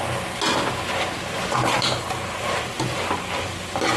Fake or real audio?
real